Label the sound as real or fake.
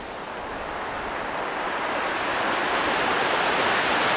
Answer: real